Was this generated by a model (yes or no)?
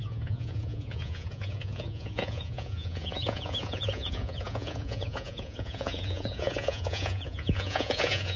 yes